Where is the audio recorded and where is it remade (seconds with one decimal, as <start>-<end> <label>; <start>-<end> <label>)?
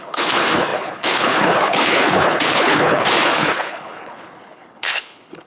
0.0-5.5 remade